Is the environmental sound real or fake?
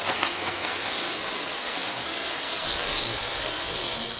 fake